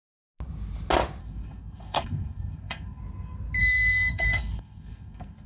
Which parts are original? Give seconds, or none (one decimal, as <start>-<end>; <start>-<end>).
0.0-1.2; 3.0-3.6